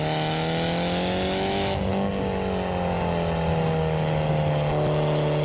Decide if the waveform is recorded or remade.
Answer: recorded